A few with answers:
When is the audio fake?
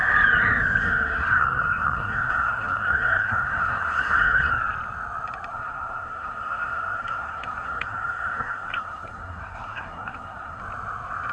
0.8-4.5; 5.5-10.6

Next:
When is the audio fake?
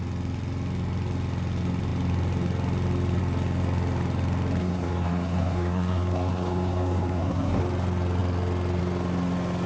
4.6-7.6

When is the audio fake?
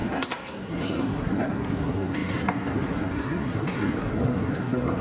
0.0-5.0